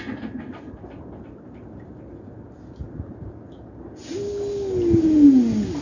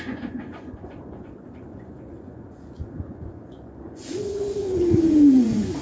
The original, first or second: first